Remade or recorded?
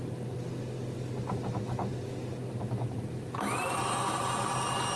recorded